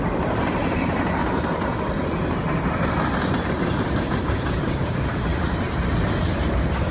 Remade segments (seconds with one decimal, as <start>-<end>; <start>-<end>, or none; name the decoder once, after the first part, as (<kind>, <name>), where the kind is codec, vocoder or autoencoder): 0.0-1.2 (vocoder, BigVGAN v2); 3.4-6.9